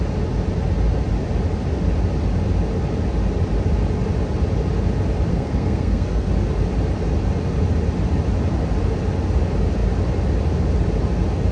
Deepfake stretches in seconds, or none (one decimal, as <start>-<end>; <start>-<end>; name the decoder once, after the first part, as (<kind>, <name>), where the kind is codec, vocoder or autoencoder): 5.3-6.3 (codec, SNAC)